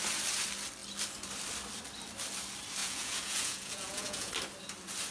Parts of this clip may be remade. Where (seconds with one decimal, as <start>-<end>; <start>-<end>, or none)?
2.8-4.3